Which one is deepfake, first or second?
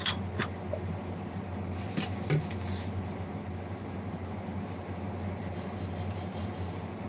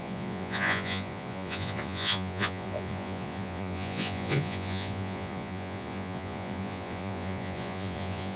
second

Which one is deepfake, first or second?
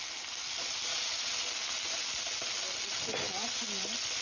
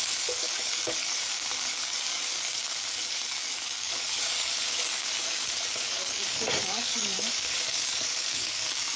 second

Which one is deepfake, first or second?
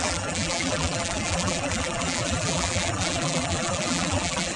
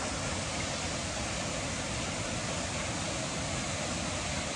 first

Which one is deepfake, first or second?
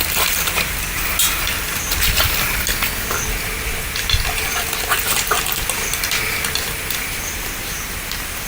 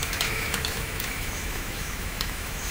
second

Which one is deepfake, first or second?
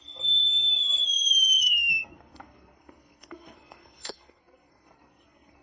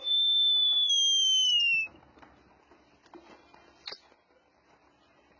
first